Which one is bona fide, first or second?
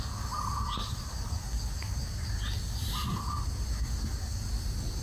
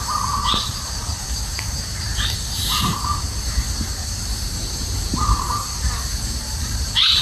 first